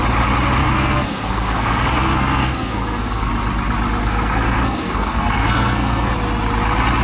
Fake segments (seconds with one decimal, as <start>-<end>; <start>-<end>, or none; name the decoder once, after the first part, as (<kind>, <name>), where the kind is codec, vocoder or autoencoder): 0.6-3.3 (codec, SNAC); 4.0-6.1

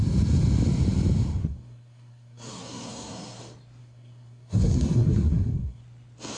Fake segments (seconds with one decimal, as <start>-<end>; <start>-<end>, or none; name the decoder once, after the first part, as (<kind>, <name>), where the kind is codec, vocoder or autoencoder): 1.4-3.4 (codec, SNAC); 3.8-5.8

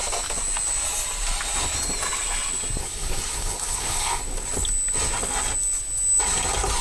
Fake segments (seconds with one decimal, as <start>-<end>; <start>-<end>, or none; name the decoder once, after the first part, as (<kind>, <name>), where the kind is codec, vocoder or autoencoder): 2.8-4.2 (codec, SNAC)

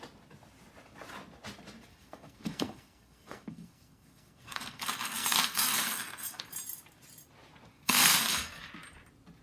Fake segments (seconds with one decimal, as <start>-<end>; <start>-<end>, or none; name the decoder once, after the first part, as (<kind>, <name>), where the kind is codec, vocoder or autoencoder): 1.9-6.4 (codec, SNAC); 7.7-8.7

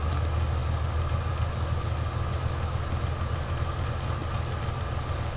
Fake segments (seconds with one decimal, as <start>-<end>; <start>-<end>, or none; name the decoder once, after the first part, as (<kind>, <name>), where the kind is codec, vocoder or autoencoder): none

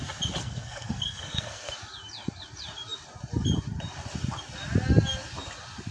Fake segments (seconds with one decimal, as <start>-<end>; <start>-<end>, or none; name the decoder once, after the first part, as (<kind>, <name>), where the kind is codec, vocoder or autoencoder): 0.4-1.7 (codec, SNAC)

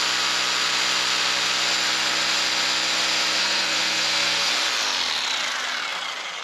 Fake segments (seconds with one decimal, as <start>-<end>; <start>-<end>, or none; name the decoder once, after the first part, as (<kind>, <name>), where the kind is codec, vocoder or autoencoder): 3.4-4.5 (codec, SNAC)

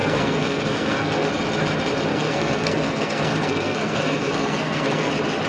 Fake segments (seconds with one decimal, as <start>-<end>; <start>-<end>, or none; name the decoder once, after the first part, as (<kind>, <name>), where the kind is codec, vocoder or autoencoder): 0.0-1.3 (codec, SNAC); 2.1-5.1